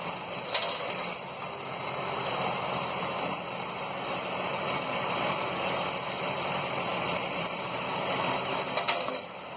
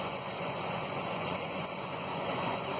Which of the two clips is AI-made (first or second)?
second